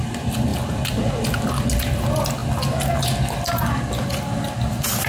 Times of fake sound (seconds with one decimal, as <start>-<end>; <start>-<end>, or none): none

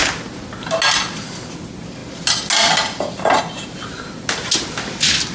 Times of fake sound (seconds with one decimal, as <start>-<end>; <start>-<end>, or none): none

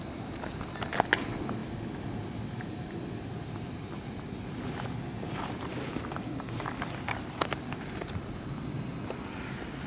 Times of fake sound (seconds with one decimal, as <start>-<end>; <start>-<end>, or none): none

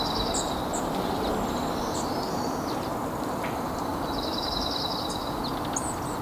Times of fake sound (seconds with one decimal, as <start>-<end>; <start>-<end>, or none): 0.7-1.3; 2.9-3.4; 3.9-4.5

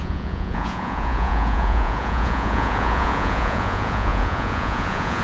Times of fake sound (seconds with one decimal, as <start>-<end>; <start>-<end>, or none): 0.0-5.2

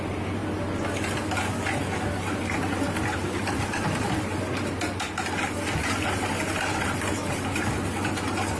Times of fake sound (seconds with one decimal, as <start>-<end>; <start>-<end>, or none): none

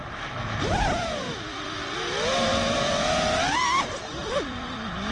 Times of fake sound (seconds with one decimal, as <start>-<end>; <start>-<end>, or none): 0.0-3.1; 4.2-5.1